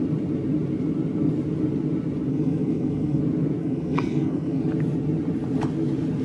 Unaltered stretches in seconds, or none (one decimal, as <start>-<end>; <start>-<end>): 0.0-2.3; 3.2-3.6; 4.6-6.2